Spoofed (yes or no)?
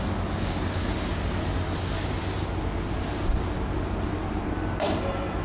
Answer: no